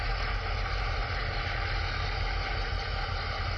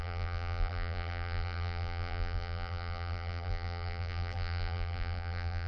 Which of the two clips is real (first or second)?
first